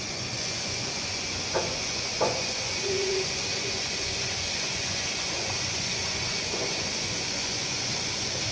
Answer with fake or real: fake